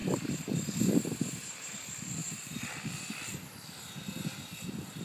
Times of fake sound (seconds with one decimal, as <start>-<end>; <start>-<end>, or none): 0.0-1.7; 2.2-2.8